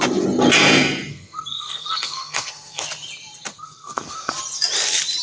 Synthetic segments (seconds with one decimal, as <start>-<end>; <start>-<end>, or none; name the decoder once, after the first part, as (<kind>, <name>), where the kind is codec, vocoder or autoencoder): 1.1-2.8 (codec, SNAC); 3.5-4.3